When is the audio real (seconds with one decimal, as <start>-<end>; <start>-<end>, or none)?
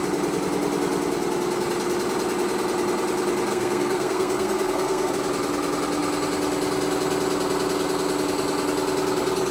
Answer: 0.0-3.5; 5.1-9.5